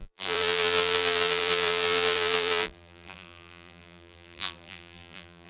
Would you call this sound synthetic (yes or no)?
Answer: yes